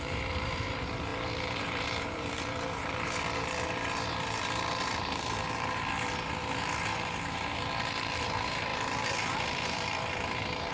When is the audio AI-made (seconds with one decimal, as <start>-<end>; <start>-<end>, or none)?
0.0-10.7